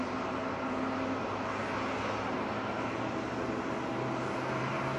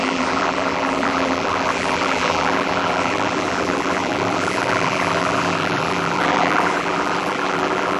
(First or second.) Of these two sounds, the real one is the first